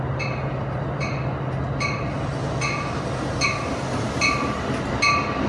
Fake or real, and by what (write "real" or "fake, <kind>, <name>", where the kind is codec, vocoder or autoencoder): real